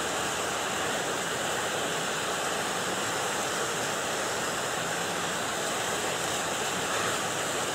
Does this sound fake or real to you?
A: real